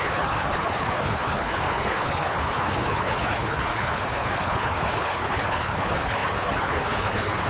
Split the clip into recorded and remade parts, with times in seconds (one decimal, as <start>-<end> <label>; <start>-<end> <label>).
0.0-7.5 remade